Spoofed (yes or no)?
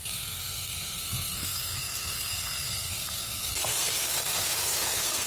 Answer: yes